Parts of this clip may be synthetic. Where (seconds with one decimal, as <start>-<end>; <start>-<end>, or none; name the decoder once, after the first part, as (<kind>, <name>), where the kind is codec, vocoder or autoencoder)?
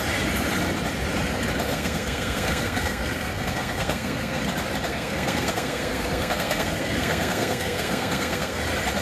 1.7-4.4 (codec, SNAC); 4.9-8.6